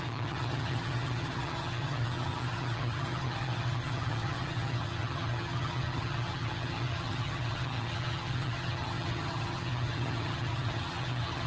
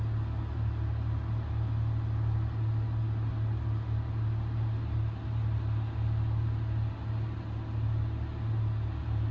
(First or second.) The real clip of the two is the second